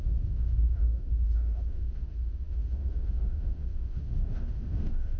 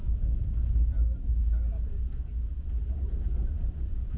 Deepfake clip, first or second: first